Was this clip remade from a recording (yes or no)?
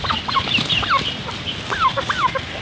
no